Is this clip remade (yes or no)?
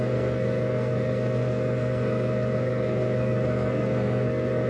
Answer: yes